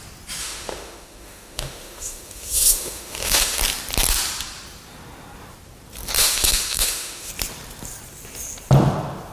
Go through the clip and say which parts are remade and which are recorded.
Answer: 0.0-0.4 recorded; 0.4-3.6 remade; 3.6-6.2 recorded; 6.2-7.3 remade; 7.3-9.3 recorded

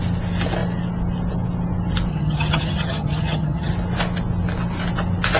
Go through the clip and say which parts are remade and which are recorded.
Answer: 0.0-2.1 recorded; 2.1-3.7 remade; 3.7-5.4 recorded

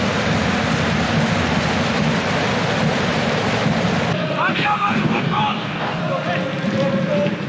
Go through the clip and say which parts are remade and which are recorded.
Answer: 0.0-4.5 recorded; 4.5-6.0 remade; 6.0-7.5 recorded

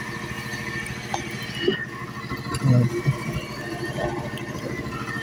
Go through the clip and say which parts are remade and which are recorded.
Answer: 0.0-5.2 recorded